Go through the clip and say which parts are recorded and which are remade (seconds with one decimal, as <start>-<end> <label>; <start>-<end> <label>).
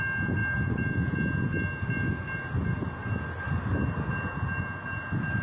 0.0-5.4 recorded